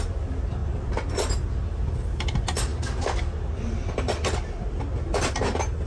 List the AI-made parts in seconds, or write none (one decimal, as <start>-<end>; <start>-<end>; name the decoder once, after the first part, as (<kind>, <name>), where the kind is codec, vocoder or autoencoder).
none